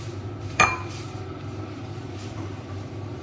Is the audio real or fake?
fake